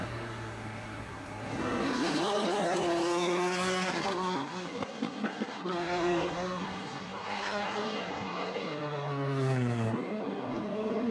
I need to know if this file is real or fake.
fake